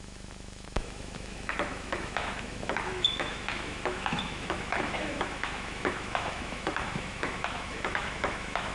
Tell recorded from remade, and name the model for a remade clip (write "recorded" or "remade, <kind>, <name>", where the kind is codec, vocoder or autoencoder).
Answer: remade, autoencoder, DAC-VAE